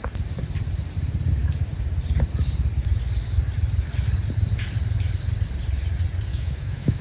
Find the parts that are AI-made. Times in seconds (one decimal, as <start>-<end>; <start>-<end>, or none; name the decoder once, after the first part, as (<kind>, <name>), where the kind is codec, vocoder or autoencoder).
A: 6.3-7.0 (autoencoder, DAC-VAE)